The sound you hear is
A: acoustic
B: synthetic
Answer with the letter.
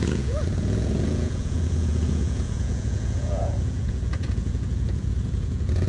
B